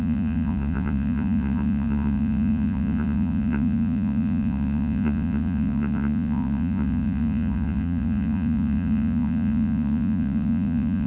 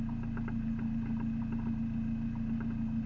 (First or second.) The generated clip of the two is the first